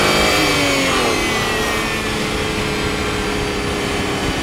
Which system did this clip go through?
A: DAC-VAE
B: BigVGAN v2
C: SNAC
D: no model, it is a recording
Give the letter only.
D